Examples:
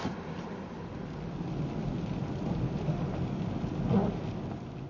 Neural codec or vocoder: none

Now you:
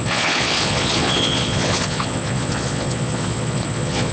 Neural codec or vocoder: vocoder, Vocos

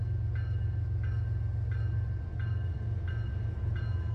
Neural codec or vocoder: none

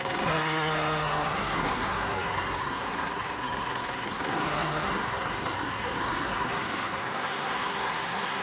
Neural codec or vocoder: codec, SNAC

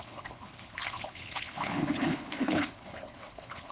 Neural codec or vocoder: codec, HILCodec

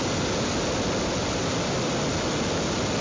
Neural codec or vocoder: none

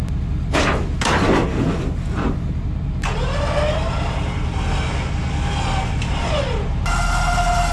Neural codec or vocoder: none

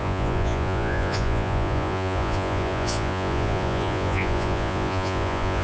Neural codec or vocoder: vocoder, Vocos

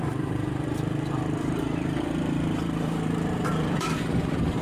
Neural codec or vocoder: vocoder, BigVGAN v2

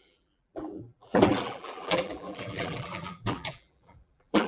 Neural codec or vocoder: vocoder, BigVGAN v2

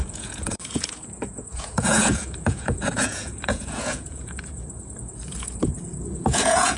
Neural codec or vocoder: vocoder, Vocos